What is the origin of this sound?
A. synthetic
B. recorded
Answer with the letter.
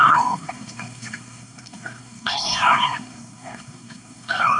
A